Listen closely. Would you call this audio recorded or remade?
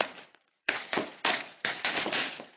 remade